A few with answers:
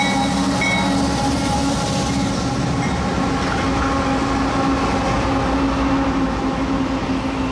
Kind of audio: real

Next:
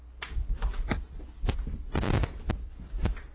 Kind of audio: real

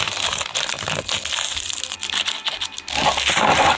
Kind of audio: real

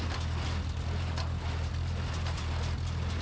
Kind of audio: real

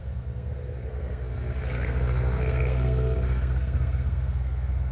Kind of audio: fake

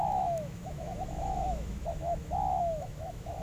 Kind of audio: fake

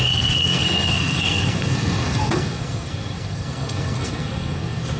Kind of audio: fake